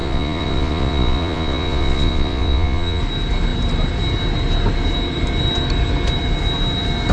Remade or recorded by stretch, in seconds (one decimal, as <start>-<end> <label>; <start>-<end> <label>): 0.0-3.0 remade; 3.0-7.1 recorded